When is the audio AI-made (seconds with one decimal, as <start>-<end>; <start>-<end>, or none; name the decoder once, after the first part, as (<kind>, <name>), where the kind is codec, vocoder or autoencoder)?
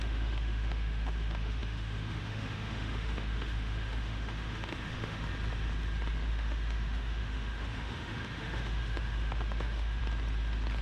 0.0-5.3 (autoencoder, DAC-VAE); 6.3-10.0